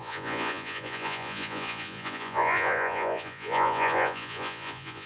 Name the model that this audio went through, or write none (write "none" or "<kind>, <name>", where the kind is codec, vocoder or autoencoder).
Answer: vocoder, Vocos